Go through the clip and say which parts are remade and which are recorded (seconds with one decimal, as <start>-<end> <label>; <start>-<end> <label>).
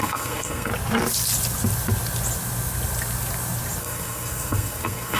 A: 0.0-0.7 remade; 0.7-3.8 recorded; 3.8-5.2 remade